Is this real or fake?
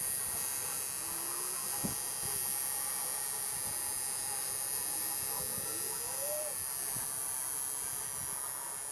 real